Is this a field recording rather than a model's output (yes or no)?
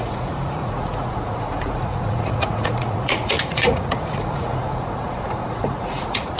no